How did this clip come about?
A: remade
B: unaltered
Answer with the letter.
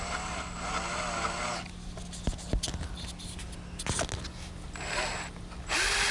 B